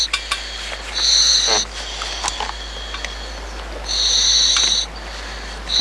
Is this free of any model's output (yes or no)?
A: yes